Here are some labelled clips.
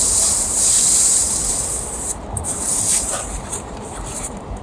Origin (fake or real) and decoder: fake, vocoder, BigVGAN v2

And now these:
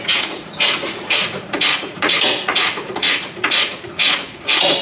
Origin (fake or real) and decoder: fake, vocoder, Vocos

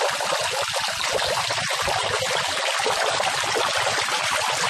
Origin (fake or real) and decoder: real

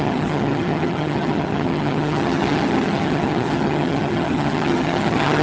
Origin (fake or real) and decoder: fake, vocoder, HiFi-GAN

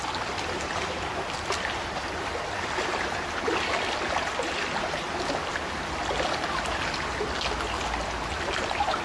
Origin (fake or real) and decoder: real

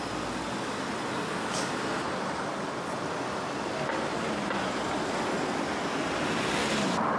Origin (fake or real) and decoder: real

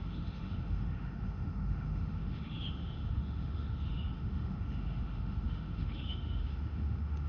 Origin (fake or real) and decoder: fake, autoencoder, DAC-VAE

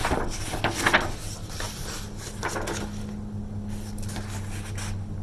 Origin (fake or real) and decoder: real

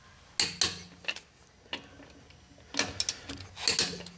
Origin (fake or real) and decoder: real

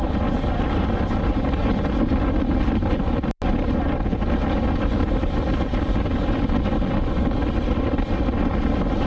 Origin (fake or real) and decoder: real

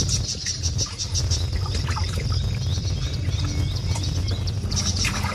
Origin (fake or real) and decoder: real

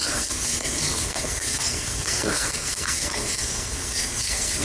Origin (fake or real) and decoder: fake, codec, SNAC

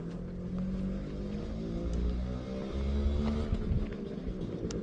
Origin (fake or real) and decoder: real